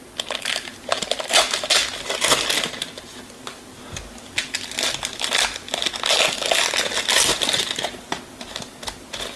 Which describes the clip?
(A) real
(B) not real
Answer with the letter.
A